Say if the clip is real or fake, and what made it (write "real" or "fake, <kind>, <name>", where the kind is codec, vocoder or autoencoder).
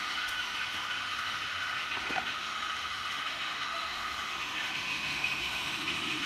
fake, autoencoder, DAC-VAE